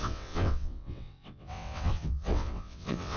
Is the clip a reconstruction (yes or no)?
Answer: yes